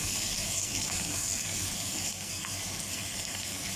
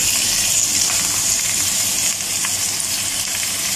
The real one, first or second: second